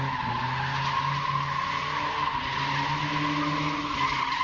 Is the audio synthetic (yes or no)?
no